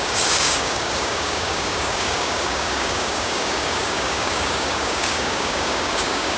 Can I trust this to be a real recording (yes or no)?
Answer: no